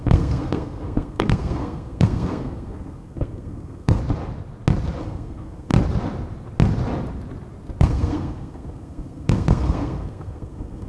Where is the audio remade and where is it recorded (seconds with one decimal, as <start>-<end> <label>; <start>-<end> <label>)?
0.0-4.0 remade; 4.0-5.0 recorded; 5.0-5.7 remade; 5.7-7.8 recorded; 7.8-10.9 remade